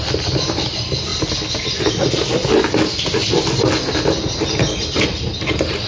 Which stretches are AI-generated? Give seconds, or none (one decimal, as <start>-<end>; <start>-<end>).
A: none